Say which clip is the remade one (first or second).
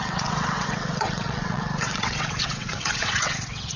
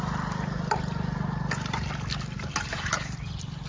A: first